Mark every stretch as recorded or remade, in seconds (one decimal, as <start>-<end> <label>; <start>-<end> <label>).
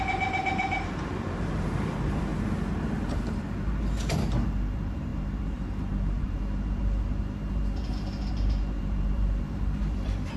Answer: 0.0-2.3 remade; 2.3-3.0 recorded; 3.0-10.4 remade